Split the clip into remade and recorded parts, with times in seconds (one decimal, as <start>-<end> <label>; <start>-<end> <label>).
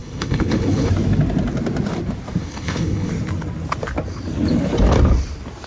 0.0-0.9 remade; 0.9-2.4 recorded; 2.4-3.1 remade; 3.1-5.7 recorded